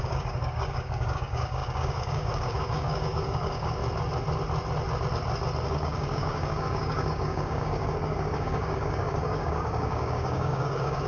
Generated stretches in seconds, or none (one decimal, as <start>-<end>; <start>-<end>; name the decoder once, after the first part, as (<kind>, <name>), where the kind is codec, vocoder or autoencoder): 0.0-3.8 (codec, DAC); 5.7-11.1